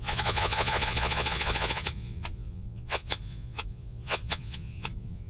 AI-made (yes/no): yes